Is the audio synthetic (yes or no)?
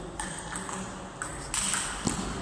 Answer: no